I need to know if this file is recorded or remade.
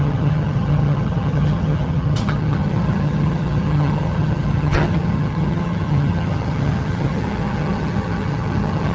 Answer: remade